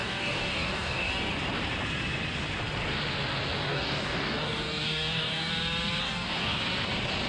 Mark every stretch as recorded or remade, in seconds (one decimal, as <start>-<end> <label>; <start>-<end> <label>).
0.0-1.1 remade; 1.1-3.6 recorded; 3.6-5.5 remade; 5.5-6.0 recorded; 6.0-6.6 remade; 6.6-7.3 recorded